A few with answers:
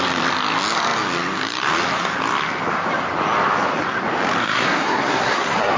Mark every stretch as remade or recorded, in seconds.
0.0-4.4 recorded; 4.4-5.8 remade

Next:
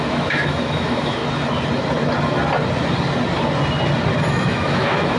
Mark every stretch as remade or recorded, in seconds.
0.0-1.2 remade; 1.2-4.3 recorded; 4.3-5.2 remade

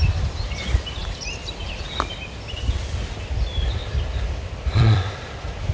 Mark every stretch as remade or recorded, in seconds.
0.0-3.8 remade; 3.8-4.6 recorded; 4.6-5.7 remade

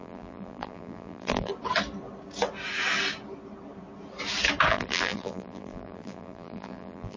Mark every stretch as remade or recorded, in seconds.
0.0-1.5 remade; 1.5-4.7 recorded; 4.7-7.2 remade

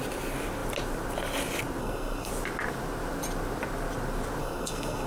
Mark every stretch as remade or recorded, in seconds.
0.0-1.8 recorded; 1.8-2.3 remade; 2.3-4.4 recorded; 4.4-5.1 remade

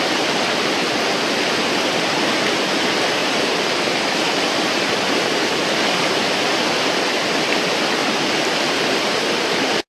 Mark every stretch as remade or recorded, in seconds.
0.0-3.2 recorded; 3.2-5.6 remade; 5.6-8.0 recorded; 8.0-9.9 remade

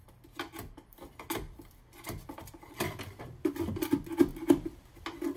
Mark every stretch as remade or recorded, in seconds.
0.0-4.3 recorded; 4.3-4.9 remade; 4.9-5.4 recorded